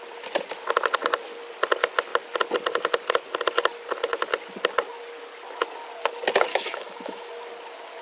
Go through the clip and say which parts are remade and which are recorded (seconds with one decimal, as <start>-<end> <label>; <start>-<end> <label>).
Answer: 0.0-6.5 recorded; 6.5-7.3 remade; 7.3-8.0 recorded